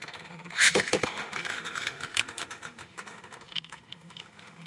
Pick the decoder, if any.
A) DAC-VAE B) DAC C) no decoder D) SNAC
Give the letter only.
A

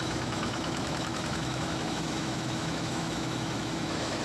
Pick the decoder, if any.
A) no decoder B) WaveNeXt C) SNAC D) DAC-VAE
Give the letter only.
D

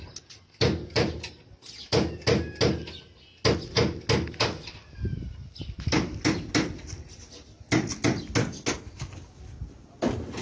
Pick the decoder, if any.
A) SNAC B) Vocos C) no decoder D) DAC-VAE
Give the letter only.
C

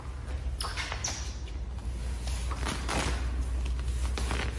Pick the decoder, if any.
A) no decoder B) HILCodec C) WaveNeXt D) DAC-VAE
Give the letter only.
A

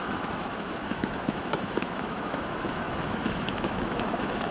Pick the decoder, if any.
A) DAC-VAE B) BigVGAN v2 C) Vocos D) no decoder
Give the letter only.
A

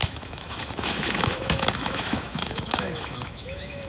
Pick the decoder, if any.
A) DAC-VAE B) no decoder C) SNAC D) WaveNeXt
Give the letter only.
A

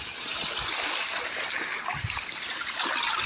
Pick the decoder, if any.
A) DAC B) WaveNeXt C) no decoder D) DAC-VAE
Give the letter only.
C